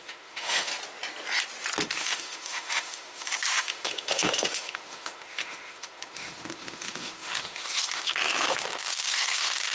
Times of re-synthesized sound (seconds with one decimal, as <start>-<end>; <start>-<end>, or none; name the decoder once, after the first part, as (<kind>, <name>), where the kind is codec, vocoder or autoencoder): 0.0-0.7 (autoencoder, DAC-VAE); 1.9-9.7